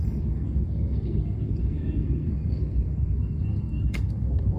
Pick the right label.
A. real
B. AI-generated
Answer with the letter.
B